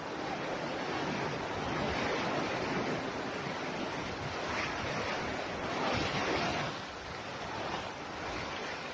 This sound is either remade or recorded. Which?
recorded